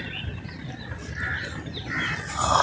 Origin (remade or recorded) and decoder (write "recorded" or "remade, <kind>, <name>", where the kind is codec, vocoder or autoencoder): recorded